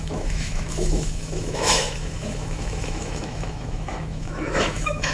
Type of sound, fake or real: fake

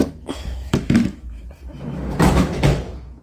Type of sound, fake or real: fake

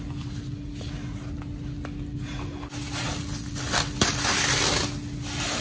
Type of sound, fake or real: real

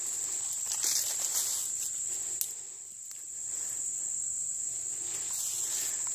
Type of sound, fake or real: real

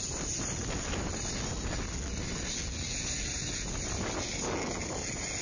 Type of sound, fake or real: real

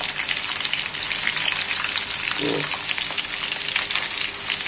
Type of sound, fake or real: real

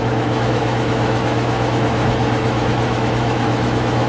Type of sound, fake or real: fake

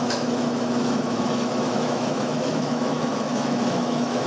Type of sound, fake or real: fake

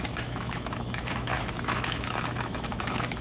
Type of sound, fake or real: fake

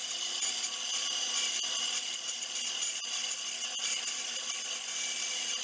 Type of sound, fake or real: real